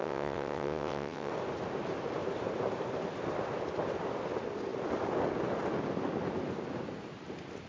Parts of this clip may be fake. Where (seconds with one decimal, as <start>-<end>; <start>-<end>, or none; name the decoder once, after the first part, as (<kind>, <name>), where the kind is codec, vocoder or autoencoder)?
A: 0.0-1.3 (vocoder, WaveNeXt)

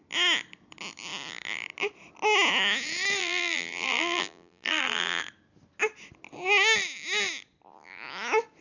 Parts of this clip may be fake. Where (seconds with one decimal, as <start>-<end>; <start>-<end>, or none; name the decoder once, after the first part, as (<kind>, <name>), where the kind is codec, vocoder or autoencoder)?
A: 3.2-5.2 (vocoder, BigVGAN v2)